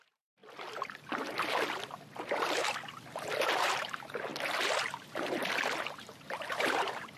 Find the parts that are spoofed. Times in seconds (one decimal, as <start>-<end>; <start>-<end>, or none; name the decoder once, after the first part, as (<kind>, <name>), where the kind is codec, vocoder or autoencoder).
0.0-0.4 (vocoder, BigVGAN v2); 2.0-2.6; 3.4-4.3; 5.8-7.2